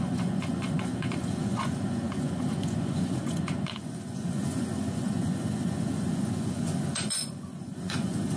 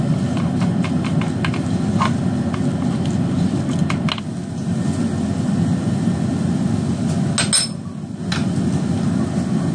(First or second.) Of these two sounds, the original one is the second